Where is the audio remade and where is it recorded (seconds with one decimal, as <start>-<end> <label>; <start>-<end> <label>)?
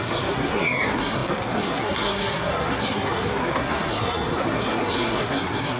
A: 0.0-5.8 remade